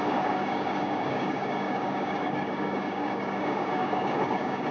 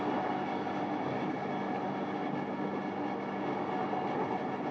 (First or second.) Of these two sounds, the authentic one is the second